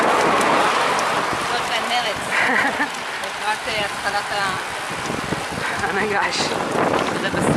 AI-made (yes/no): no